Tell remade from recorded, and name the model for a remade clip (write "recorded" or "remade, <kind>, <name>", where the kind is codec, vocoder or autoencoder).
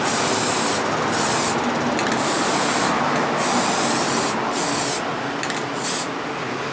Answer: recorded